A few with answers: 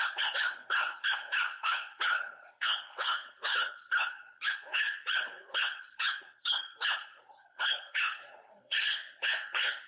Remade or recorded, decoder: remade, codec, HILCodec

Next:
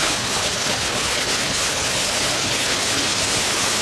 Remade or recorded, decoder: remade, codec, HILCodec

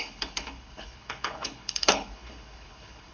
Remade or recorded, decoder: remade, codec, HILCodec